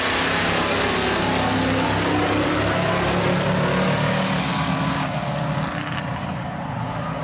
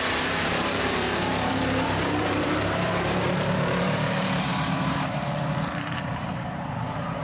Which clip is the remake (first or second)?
second